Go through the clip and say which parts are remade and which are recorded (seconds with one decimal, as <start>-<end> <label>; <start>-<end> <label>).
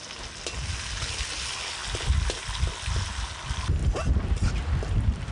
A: 0.0-5.3 recorded